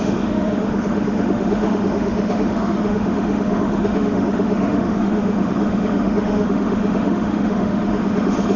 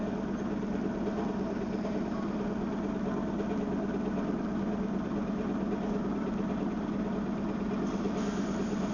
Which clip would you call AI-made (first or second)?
first